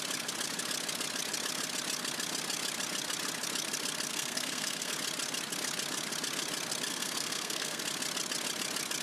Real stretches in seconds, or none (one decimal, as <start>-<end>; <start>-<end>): 0.0-4.1; 4.9-6.9; 7.8-9.0